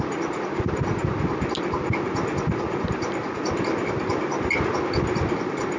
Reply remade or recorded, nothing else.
recorded